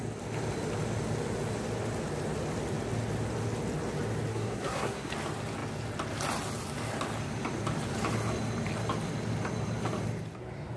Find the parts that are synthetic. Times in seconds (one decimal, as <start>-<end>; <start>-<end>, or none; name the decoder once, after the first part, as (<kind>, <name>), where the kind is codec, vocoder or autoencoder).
4.3-5.1 (codec, SNAC)